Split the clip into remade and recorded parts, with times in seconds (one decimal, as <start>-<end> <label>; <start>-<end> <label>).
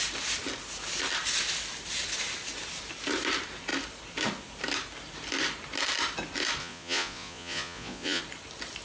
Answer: 0.0-6.6 recorded; 6.6-8.2 remade; 8.2-8.8 recorded